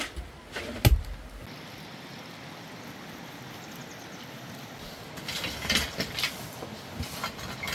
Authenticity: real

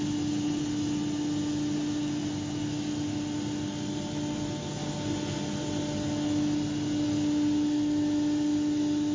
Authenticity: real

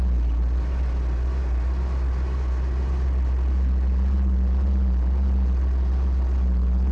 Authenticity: real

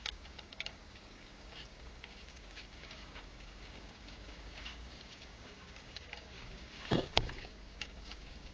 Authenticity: fake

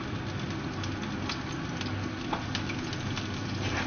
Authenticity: real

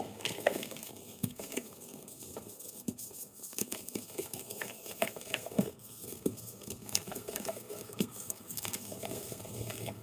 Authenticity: fake